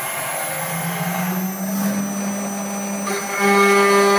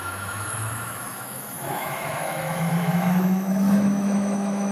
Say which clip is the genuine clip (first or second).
first